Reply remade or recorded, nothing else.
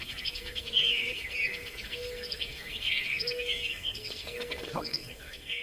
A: remade